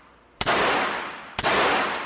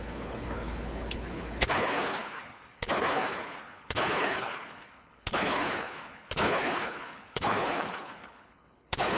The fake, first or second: second